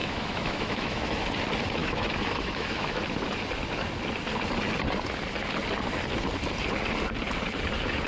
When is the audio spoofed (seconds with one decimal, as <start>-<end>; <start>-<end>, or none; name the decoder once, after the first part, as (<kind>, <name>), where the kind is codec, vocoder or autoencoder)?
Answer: 0.0-1.2 (autoencoder, DAC-VAE); 1.8-3.0